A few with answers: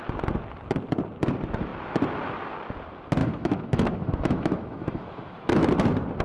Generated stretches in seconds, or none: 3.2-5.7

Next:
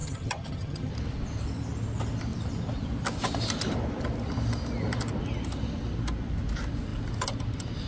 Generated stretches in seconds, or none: 0.0-0.9

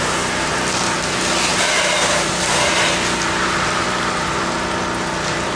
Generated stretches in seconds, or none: 1.5-2.3

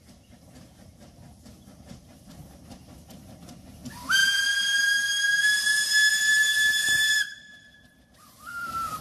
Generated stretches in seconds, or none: 0.0-9.0

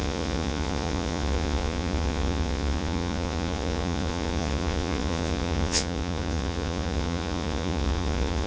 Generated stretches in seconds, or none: 0.0-8.5

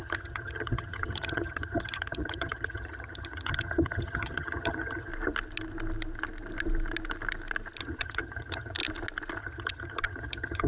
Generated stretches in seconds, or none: 0.0-5.1; 7.8-8.8; 9.4-10.7

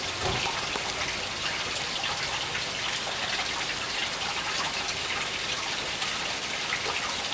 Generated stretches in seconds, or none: none

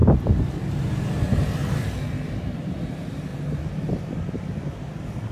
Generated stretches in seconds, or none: 0.7-3.3